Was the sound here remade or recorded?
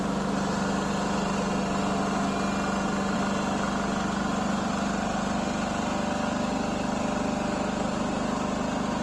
recorded